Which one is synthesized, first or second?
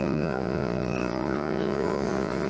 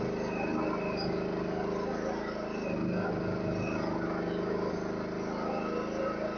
first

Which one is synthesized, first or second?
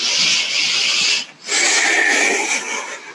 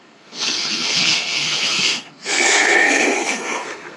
second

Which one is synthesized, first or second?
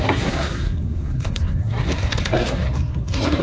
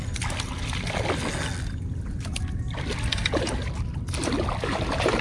first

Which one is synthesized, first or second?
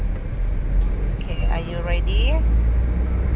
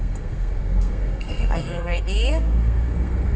second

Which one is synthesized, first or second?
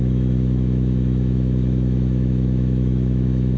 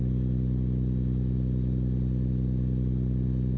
first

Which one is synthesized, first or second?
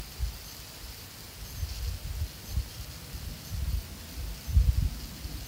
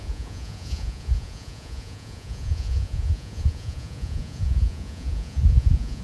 second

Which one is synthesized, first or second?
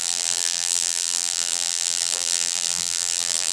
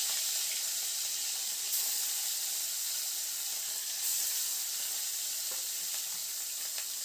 first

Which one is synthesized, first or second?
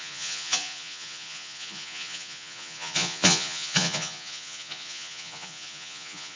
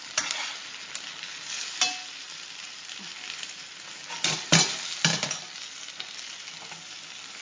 first